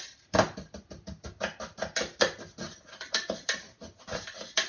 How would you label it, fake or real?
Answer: real